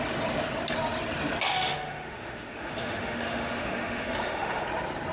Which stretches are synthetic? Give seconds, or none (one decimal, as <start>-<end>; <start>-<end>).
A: 1.5-4.6